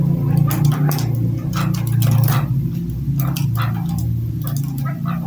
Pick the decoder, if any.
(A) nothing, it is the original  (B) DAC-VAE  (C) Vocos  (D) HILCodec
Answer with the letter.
A